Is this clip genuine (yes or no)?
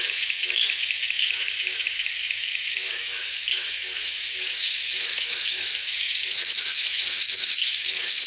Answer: no